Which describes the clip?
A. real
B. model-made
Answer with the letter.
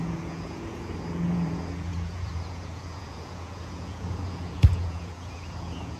B